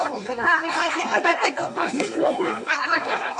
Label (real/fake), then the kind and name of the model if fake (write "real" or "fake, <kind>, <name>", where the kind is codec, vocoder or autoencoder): fake, codec, SNAC